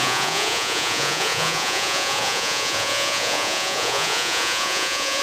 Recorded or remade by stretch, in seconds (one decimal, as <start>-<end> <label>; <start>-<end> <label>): 0.0-5.2 remade